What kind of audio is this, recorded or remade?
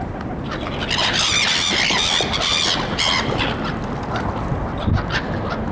recorded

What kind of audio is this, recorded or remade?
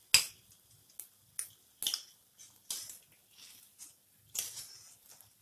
recorded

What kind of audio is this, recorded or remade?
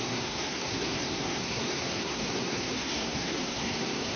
remade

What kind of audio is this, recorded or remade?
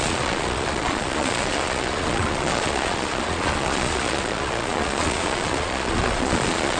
remade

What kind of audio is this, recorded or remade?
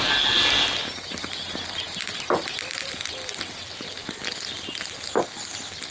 recorded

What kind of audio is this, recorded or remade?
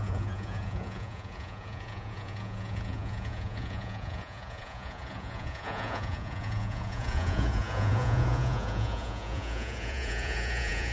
remade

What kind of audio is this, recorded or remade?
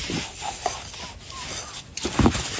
recorded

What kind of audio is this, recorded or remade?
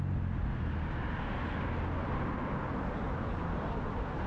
recorded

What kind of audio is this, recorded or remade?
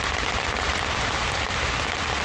recorded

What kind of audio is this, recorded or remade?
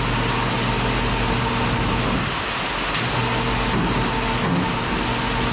recorded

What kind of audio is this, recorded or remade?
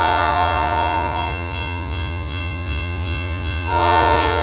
remade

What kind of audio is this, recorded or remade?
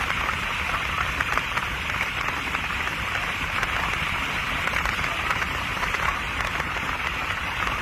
recorded